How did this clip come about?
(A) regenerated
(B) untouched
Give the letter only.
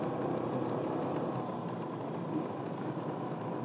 B